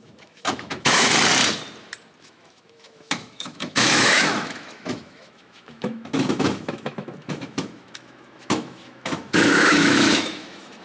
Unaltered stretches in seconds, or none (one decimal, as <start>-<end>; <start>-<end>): 1.1-2.2